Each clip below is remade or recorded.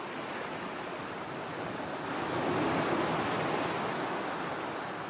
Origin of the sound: remade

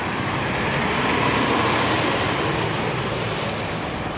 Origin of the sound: recorded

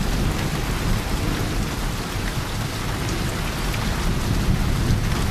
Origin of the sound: recorded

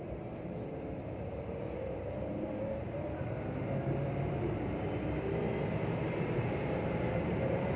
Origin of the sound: remade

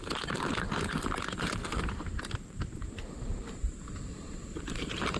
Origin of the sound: remade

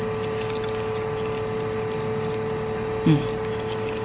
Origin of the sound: recorded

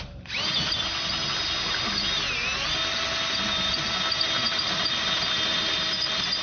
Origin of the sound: recorded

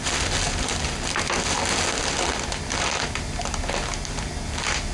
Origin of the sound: recorded